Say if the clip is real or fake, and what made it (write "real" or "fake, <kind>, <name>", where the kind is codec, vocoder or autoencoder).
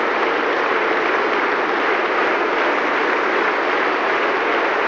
real